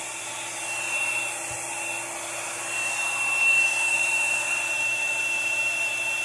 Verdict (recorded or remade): remade